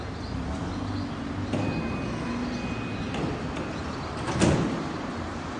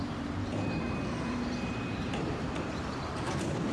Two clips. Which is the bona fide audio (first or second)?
first